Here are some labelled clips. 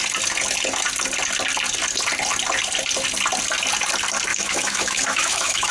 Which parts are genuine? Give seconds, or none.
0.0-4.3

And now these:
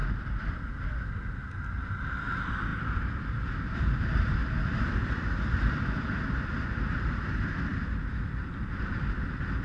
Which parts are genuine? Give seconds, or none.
0.5-2.7; 6.6-7.7; 8.4-9.6

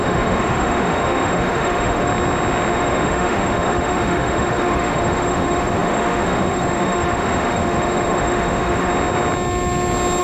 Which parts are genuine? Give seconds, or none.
2.1-2.7; 8.9-10.2

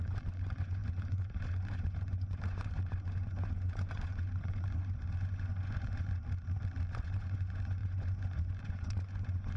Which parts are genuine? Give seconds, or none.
6.2-6.9

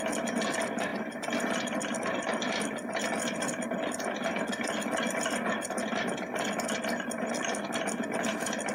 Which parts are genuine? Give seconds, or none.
0.0-8.7

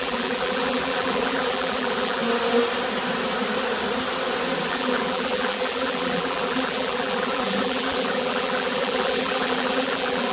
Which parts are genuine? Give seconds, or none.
2.2-4.7

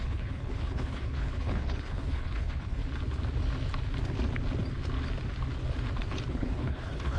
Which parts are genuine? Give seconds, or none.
2.8-6.3

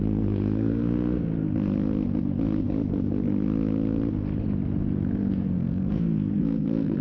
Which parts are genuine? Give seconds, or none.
1.3-5.3